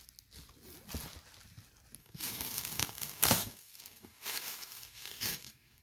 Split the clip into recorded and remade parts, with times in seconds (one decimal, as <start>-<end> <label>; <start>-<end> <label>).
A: 0.0-2.0 recorded; 2.0-5.8 remade